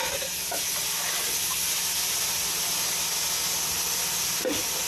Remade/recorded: recorded